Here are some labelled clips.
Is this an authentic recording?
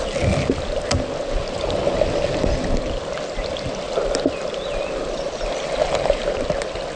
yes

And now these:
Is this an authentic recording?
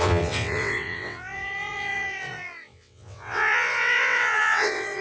no